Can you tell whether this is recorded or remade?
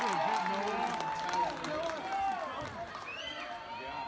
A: recorded